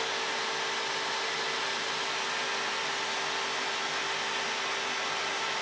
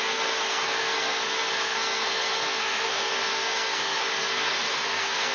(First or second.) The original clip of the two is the first